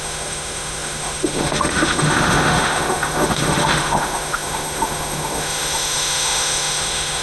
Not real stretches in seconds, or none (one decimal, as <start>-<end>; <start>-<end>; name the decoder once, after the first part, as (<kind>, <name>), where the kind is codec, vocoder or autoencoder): 0.0-7.2 (autoencoder, DAC-VAE)